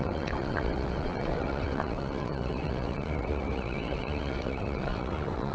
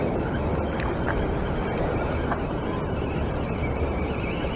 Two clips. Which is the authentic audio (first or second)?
second